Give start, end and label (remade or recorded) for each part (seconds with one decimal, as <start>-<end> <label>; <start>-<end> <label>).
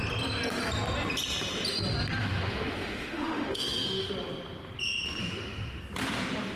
0.0-2.2 recorded; 2.2-4.1 remade; 4.1-5.2 recorded; 5.2-5.8 remade; 5.8-6.6 recorded